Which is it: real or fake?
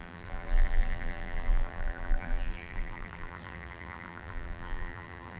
fake